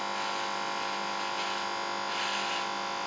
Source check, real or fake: real